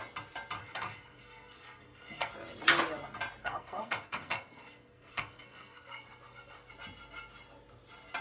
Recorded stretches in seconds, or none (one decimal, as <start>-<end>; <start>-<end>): 0.0-0.6; 2.3-3.4; 6.7-8.2